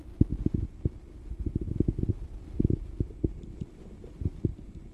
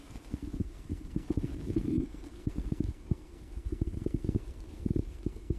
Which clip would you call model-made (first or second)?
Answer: second